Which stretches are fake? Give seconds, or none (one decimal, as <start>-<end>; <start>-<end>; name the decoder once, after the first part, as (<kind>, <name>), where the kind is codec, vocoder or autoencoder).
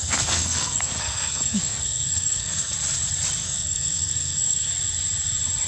0.0-2.7 (codec, SNAC); 3.4-4.7